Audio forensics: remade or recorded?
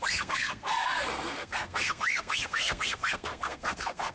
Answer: remade